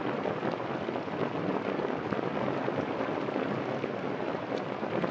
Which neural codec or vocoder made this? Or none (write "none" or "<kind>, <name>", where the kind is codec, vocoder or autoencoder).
none